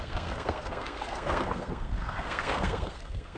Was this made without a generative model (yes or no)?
no